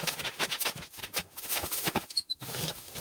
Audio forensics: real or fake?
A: fake